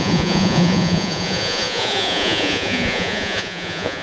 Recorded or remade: remade